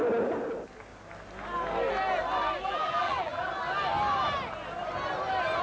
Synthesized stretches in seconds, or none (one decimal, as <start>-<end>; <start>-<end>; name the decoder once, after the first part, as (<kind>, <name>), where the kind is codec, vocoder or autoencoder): 2.6-3.5 (vocoder, BigVGAN v2)